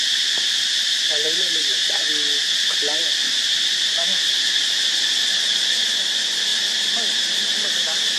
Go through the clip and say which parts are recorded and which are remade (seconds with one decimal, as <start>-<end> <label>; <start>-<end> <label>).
0.0-6.5 recorded; 6.5-8.2 remade